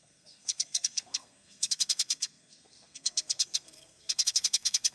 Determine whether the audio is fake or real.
fake